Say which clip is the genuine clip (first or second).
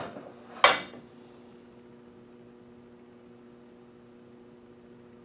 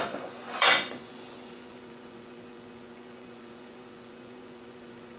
first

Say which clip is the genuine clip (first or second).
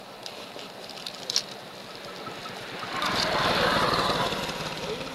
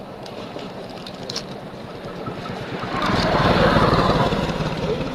first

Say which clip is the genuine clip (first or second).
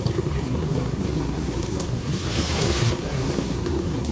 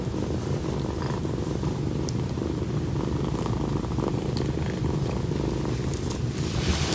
second